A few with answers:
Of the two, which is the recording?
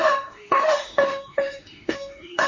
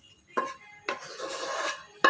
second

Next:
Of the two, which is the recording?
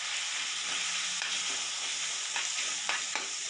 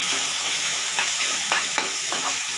first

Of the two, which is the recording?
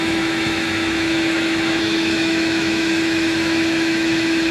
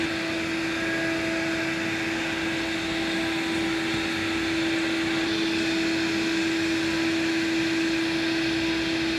second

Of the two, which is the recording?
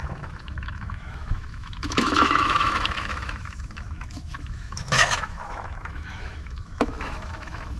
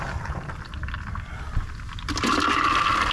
second